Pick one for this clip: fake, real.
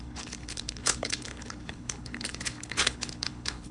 fake